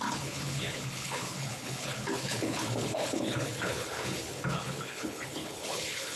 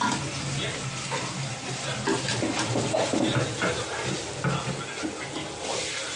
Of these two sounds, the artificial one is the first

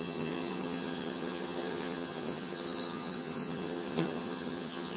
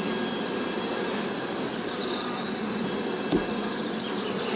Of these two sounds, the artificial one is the first